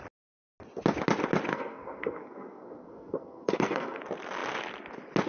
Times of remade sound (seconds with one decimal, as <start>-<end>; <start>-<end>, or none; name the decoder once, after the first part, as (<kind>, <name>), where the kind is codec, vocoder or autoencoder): 1.5-4.0 (codec, SNAC)